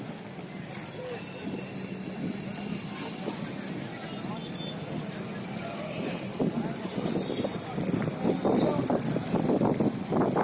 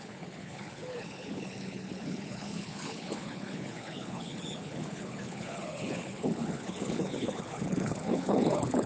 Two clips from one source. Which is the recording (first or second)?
first